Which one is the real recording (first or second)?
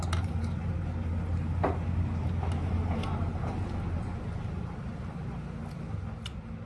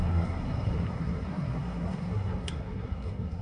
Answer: first